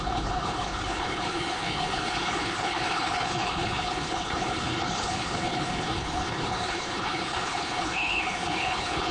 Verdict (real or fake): fake